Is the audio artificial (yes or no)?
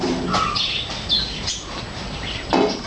no